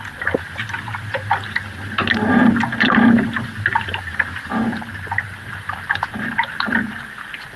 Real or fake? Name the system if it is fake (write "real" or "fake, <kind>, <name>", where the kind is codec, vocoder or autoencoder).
real